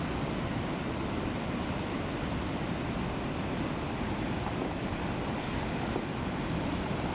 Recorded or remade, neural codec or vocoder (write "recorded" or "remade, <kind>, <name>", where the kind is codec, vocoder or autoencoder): recorded